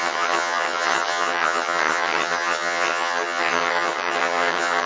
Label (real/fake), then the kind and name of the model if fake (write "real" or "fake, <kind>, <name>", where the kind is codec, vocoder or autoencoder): fake, vocoder, HiFi-GAN